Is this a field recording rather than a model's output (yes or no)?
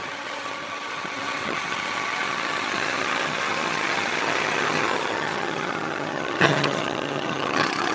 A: no